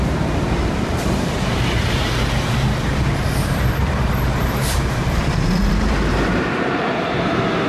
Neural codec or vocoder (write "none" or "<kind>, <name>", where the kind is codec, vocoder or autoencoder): vocoder, BigVGAN v2